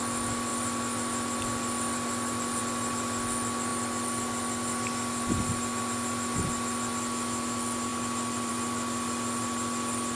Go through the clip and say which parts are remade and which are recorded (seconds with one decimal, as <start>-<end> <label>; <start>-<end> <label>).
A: 0.0-0.5 recorded; 0.5-2.6 remade; 2.6-3.7 recorded; 3.7-5.8 remade; 5.8-7.9 recorded; 7.9-8.5 remade; 8.5-10.1 recorded